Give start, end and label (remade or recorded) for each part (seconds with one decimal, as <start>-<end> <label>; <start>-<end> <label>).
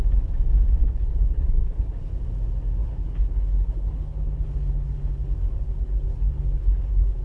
0.0-0.8 recorded; 0.8-2.2 remade; 2.2-2.8 recorded; 2.8-7.2 remade